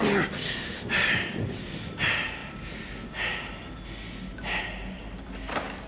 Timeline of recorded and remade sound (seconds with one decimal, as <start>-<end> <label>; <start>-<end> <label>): 0.0-5.9 recorded